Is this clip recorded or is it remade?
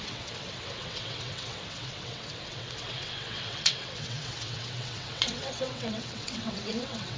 remade